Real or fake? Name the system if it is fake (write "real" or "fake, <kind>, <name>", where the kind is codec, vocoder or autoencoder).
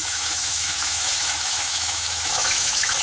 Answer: fake, autoencoder, DAC-VAE